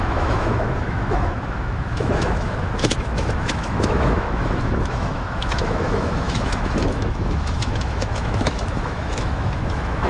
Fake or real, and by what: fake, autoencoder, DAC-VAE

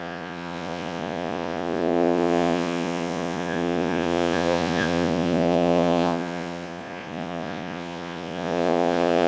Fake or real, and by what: fake, vocoder, Vocos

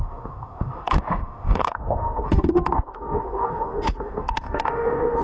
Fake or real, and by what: fake, autoencoder, DAC-VAE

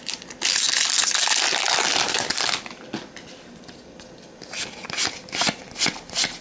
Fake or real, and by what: real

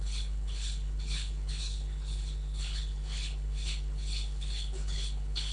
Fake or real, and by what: fake, codec, HILCodec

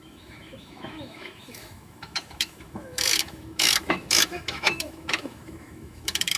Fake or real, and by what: fake, autoencoder, DAC-VAE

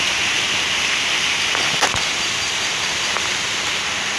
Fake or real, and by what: real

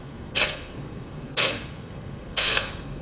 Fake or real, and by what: fake, codec, SNAC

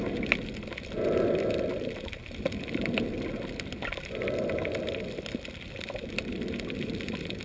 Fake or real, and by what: real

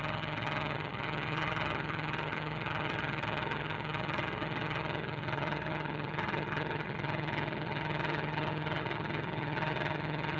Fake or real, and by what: fake, vocoder, HiFi-GAN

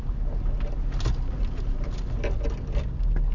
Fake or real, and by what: real